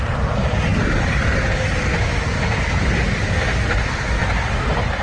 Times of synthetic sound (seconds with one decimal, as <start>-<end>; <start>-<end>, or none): none